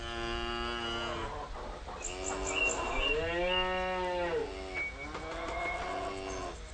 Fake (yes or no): no